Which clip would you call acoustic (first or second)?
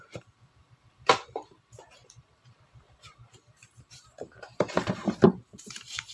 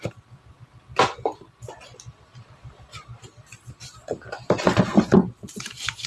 second